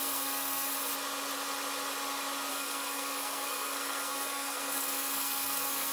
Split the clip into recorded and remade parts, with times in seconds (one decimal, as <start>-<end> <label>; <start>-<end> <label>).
0.0-0.9 remade; 0.9-2.5 recorded; 2.5-5.9 remade